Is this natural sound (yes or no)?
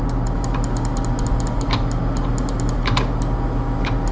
yes